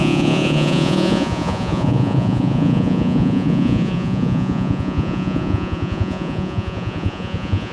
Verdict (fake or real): fake